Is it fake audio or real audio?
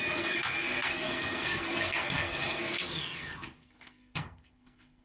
fake